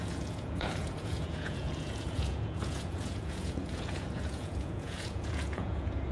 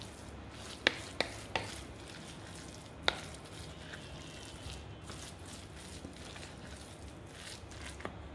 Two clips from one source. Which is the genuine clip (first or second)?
second